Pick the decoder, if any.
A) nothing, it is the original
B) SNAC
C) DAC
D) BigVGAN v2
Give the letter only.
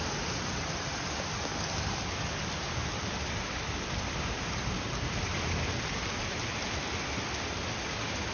A